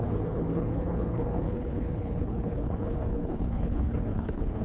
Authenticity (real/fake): fake